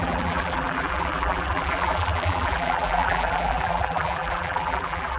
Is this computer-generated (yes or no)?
yes